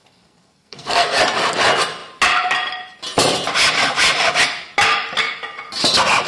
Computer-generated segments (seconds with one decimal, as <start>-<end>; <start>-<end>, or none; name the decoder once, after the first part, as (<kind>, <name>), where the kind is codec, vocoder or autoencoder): 0.0-1.2 (codec, SNAC)

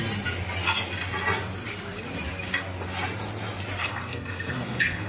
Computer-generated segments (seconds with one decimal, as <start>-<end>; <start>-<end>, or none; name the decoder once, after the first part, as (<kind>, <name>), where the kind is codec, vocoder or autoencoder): 3.8-5.1 (codec, SNAC)

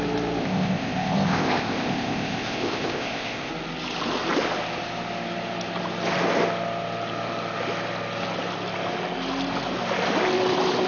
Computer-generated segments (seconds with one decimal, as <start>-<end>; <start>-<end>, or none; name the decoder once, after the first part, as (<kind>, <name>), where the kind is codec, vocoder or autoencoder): 0.4-3.5 (codec, ZipCodec)

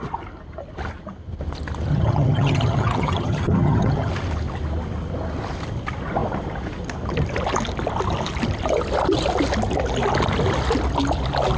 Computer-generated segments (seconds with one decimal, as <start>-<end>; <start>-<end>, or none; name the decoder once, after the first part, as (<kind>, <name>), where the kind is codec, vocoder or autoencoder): 1.9-4.1 (vocoder, HiFi-GAN)

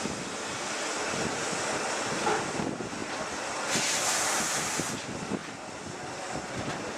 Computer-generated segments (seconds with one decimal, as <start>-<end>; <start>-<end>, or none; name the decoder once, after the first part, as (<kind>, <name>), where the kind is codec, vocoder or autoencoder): none

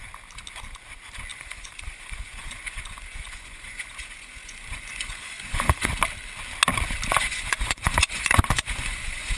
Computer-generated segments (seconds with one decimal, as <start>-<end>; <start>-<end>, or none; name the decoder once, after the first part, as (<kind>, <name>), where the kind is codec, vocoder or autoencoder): 1.3-5.9 (vocoder, Vocos); 7.1-9.4

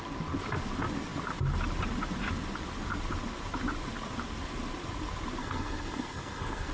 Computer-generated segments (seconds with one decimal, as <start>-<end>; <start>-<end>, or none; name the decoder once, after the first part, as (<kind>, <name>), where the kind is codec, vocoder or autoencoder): 5.4-6.7 (codec, SNAC)